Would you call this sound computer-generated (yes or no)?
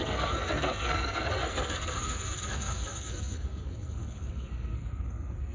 yes